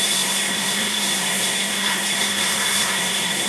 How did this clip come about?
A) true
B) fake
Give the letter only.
B